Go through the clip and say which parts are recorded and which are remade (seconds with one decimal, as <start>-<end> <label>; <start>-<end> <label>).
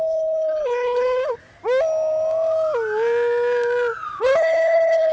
0.0-1.4 remade; 1.4-4.2 recorded; 4.2-5.1 remade